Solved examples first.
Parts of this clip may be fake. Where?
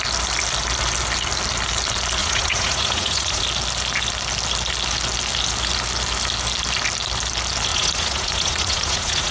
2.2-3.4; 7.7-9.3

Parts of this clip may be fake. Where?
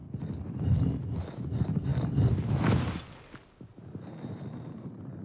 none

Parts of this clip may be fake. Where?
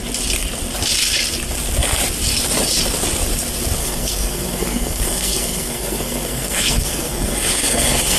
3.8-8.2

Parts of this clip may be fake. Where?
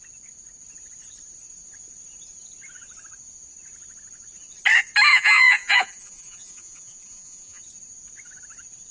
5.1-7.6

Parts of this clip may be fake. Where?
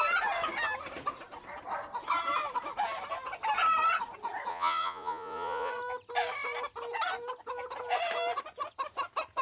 4.5-5.7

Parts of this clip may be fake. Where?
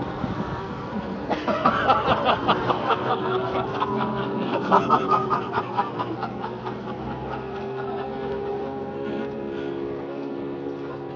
0.0-1.8; 2.7-11.2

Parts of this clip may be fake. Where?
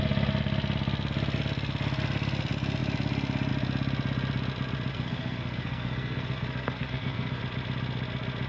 4.9-7.4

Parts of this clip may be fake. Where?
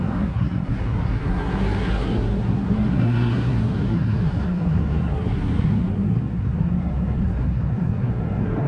0.0-8.7